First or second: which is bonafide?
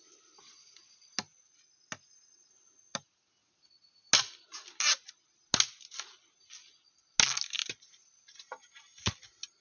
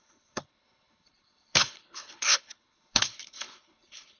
first